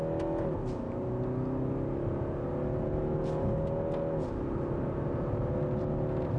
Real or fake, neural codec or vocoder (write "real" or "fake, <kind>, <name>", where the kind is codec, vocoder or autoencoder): real